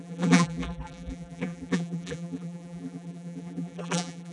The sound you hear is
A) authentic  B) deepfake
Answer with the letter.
B